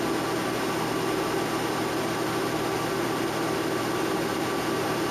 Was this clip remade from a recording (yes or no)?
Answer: no